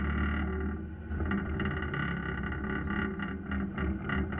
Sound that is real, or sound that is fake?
real